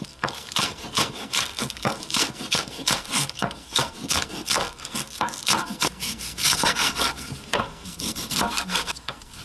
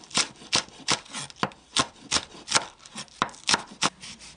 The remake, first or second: first